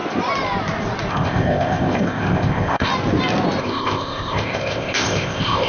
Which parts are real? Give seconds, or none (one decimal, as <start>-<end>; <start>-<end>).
0.0-1.1; 2.9-3.6